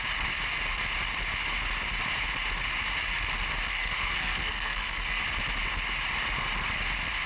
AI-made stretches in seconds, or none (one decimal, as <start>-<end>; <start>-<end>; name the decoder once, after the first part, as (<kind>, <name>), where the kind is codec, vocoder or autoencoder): 3.7-5.2 (codec, SNAC)